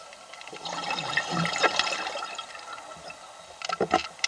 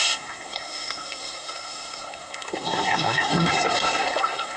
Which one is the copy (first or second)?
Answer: second